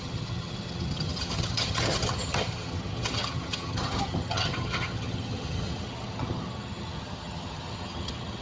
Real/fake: fake